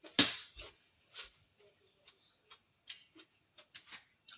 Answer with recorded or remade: recorded